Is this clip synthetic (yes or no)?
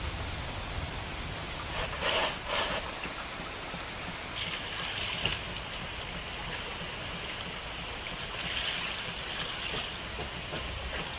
no